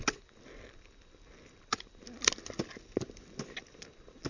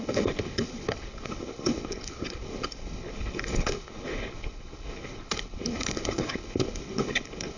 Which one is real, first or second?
first